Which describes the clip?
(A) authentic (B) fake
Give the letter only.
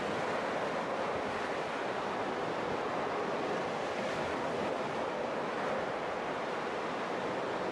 A